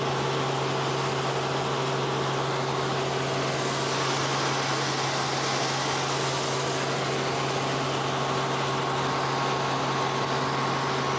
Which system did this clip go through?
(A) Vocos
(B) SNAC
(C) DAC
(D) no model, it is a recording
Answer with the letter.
D